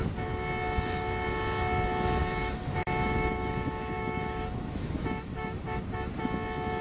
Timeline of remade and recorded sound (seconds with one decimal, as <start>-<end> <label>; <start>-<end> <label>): 0.0-2.2 recorded; 2.2-5.8 remade; 5.8-6.8 recorded